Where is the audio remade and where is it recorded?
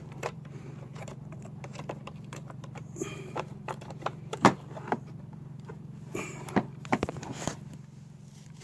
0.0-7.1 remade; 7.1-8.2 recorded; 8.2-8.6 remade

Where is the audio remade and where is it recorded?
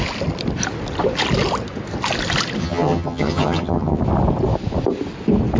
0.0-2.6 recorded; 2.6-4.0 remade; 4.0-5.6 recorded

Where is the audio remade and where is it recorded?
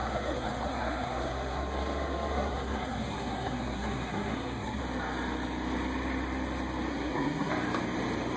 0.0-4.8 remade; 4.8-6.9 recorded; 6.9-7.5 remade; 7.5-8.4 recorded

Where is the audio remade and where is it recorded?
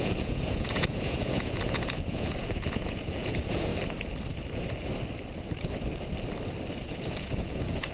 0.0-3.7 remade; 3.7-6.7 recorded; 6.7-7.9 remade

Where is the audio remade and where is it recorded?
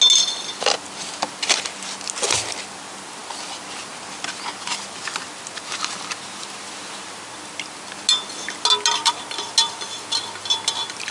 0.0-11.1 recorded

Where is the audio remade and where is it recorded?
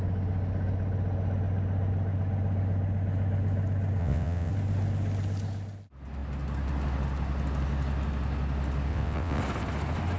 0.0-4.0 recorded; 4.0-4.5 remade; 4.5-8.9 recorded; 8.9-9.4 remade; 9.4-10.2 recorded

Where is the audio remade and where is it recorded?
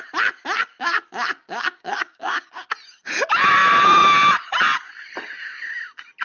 0.0-0.7 recorded; 0.7-2.7 remade; 2.7-6.2 recorded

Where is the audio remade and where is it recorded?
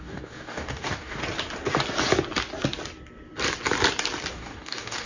0.0-1.2 remade; 1.2-4.3 recorded; 4.3-5.1 remade